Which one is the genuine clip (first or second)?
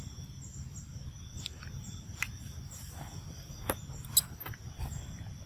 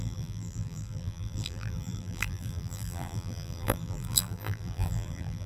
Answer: first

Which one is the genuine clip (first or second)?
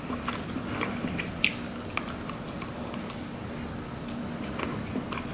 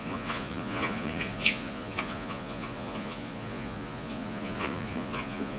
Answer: first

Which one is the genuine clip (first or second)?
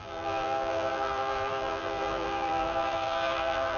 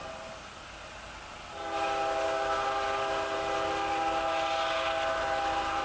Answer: second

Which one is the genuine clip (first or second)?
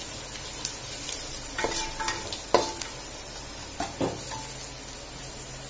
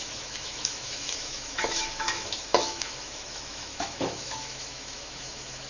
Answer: first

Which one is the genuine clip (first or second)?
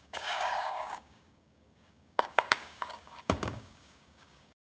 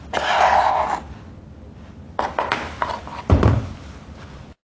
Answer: second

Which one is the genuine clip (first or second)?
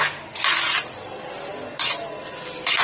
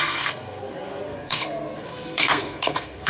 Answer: first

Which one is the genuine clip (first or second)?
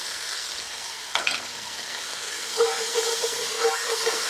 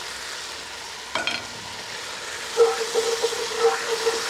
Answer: second